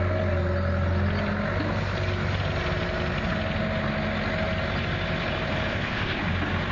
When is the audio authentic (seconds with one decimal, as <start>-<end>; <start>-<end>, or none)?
0.0-5.7; 6.2-6.7